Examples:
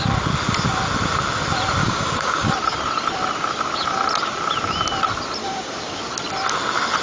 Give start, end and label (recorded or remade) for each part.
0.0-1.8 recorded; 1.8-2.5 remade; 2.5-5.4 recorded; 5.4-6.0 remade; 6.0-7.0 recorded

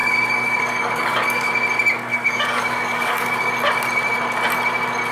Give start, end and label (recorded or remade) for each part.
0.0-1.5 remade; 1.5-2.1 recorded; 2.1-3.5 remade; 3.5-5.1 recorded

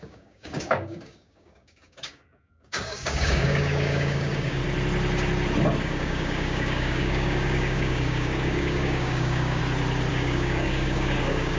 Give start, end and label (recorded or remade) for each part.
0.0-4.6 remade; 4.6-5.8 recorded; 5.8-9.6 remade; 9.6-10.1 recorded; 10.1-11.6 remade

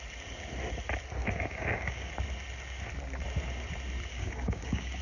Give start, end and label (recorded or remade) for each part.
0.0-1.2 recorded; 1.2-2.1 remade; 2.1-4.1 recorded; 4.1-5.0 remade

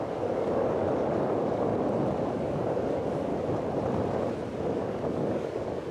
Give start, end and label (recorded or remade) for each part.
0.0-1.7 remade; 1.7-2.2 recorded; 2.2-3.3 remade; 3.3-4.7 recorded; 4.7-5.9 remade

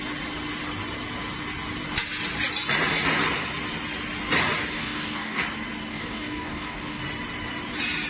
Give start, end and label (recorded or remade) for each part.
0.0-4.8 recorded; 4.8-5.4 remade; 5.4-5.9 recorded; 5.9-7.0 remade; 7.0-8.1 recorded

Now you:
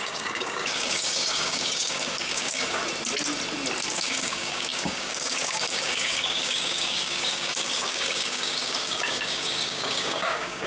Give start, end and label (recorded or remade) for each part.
0.0-2.8 remade; 2.8-3.9 recorded; 3.9-10.7 remade

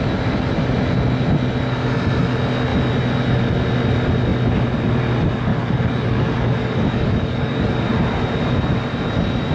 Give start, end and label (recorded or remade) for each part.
0.0-5.5 recorded; 5.5-7.8 remade; 7.8-9.5 recorded